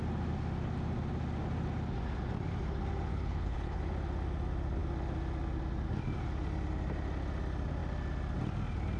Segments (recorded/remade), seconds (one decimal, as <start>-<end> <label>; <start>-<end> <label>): 0.0-3.1 recorded; 3.1-3.8 remade; 3.8-9.0 recorded